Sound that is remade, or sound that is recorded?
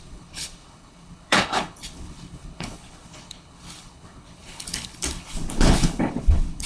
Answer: remade